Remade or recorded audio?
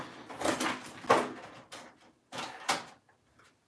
recorded